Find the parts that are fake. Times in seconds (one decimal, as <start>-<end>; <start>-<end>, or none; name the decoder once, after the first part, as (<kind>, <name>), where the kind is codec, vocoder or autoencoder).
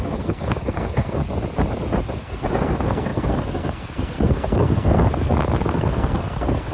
0.0-1.2 (codec, SNAC); 2.2-6.7